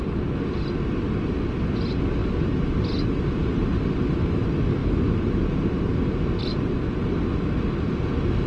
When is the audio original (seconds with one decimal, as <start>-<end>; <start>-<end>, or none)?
0.0-8.5